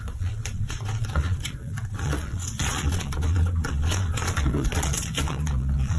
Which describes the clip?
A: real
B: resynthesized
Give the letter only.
B